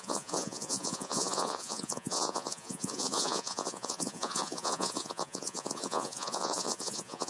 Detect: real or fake fake